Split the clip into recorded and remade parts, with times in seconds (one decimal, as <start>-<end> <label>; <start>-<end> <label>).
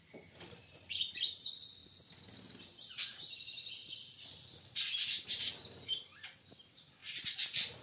0.0-1.8 remade; 1.8-3.4 recorded; 3.4-3.8 remade; 3.8-5.6 recorded; 5.6-7.8 remade